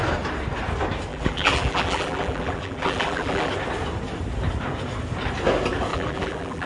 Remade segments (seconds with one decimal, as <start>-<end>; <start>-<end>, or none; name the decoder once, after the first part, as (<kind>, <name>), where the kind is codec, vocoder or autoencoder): 1.1-3.5 (vocoder, BigVGAN v2); 5.9-6.7